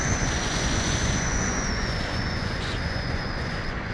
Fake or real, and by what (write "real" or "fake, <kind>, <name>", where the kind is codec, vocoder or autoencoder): fake, vocoder, Vocos